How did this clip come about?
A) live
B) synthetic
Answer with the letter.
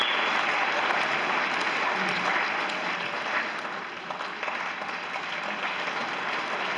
A